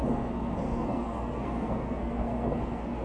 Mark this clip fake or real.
fake